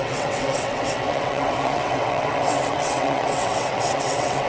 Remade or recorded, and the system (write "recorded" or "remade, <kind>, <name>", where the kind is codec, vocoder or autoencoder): remade, vocoder, WaveNeXt